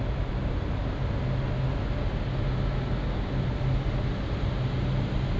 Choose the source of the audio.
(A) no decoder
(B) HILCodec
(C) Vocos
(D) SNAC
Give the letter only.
A